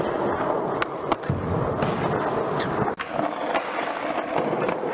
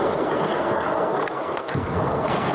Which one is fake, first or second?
second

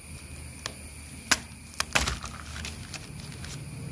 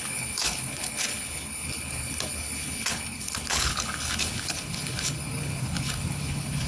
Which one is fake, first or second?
second